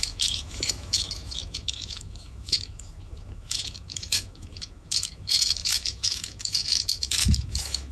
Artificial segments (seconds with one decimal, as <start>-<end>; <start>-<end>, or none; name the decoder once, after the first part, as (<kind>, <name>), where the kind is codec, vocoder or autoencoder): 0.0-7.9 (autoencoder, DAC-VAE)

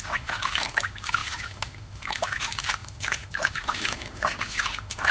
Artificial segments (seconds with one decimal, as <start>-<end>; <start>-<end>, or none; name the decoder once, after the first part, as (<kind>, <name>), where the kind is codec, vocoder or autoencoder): 0.0-5.1 (autoencoder, DAC-VAE)

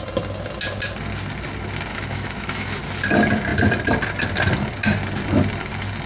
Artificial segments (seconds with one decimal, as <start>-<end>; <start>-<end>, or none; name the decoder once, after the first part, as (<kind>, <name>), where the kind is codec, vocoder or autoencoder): 1.9-2.8 (autoencoder, DAC-VAE)

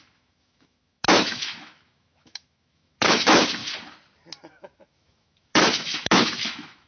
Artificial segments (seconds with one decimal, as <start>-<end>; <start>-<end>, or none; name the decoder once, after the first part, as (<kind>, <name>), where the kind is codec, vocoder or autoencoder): 0.0-3.6 (autoencoder, DAC-VAE); 4.4-6.9

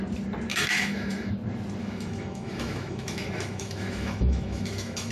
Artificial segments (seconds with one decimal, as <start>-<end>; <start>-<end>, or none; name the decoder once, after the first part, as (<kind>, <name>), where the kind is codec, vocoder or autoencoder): 0.5-1.3 (autoencoder, DAC-VAE); 1.8-5.1

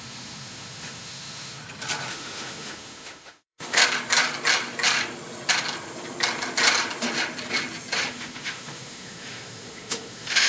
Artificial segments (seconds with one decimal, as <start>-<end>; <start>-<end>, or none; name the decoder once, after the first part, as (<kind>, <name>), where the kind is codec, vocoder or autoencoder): 0.0-1.6 (autoencoder, DAC-VAE); 2.1-3.8; 8.1-10.5